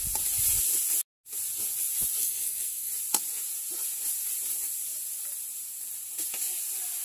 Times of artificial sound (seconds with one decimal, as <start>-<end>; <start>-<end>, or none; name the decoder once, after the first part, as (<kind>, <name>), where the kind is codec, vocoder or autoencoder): 2.2-2.9 (codec, SNAC)